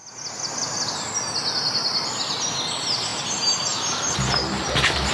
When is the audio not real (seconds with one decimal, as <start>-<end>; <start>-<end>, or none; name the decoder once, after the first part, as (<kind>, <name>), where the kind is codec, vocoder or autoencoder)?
3.1-5.1 (vocoder, BigVGAN v2)